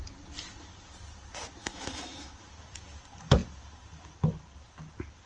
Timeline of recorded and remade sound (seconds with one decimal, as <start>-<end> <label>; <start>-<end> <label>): 0.0-1.6 recorded; 1.6-2.4 remade; 2.4-5.3 recorded